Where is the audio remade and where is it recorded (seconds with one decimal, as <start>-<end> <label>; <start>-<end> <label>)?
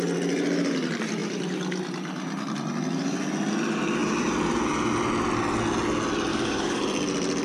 0.0-6.3 recorded; 6.3-6.8 remade; 6.8-7.4 recorded